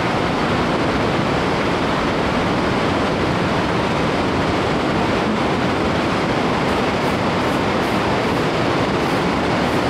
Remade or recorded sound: remade